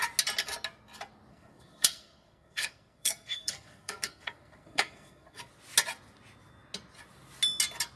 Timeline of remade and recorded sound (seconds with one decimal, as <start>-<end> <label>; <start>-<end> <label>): 0.0-1.3 recorded; 1.3-5.5 remade; 5.5-8.0 recorded